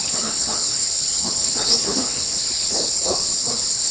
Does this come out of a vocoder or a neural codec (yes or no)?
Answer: yes